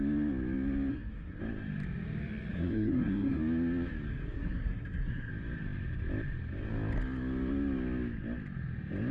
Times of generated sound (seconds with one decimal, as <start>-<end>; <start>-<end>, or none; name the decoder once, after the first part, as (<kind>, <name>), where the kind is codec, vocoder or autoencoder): 0.9-1.4 (codec, SNAC); 2.5-3.4; 4.1-5.3